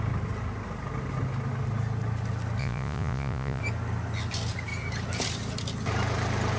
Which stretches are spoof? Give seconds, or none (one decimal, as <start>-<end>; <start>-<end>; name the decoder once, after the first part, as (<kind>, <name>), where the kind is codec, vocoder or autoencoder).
2.6-3.6 (vocoder, Vocos)